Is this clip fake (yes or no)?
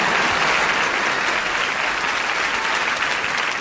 no